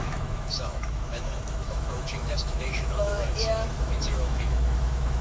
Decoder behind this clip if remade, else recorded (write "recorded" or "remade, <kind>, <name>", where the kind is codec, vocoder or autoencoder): remade, autoencoder, DAC-VAE